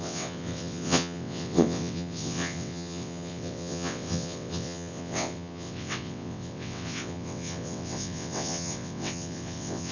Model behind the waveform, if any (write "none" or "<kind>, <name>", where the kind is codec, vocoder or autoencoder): vocoder, WaveNeXt